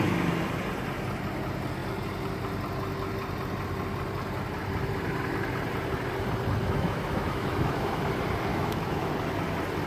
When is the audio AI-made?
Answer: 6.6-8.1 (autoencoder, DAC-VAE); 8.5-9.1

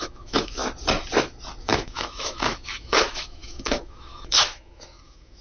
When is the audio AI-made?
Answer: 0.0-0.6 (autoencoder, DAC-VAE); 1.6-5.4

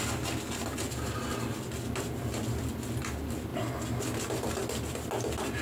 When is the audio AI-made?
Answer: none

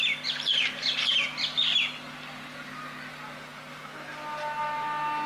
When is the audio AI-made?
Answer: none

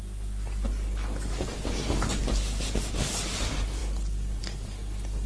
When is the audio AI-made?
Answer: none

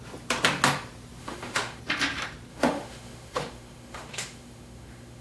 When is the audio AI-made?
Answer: 1.2-1.8 (autoencoder, DAC-VAE); 2.5-5.2